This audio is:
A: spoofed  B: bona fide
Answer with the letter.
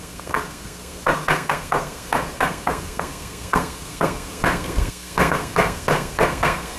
A